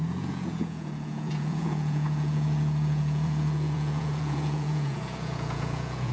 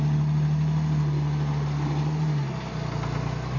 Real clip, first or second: second